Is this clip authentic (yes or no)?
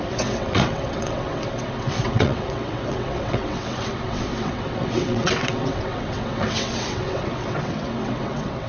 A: no